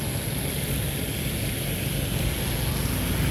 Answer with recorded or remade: recorded